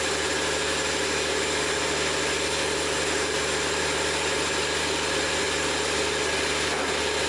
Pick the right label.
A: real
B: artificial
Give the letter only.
A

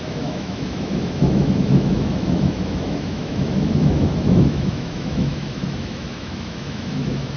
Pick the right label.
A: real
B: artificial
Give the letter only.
B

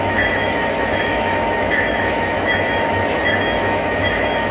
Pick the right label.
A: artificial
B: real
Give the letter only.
A